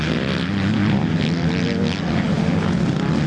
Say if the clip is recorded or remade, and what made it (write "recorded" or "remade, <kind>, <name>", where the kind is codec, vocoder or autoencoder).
recorded